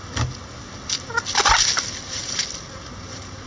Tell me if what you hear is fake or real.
real